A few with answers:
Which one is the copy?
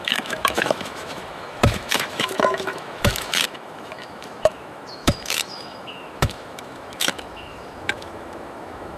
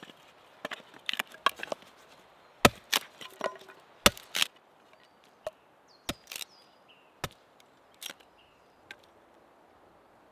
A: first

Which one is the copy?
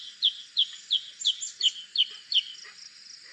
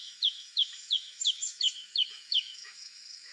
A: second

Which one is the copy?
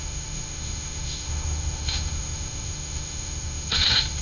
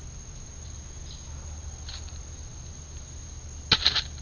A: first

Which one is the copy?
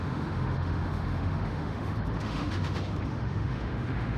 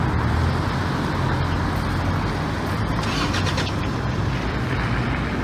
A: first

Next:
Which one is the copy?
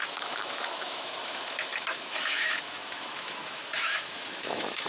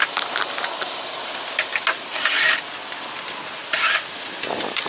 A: first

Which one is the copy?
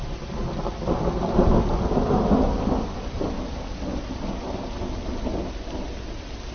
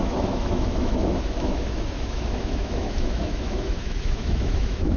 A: second